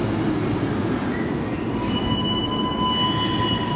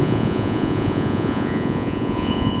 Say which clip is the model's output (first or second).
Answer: second